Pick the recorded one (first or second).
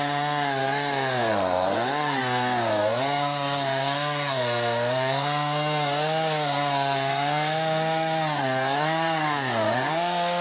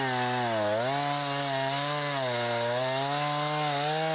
second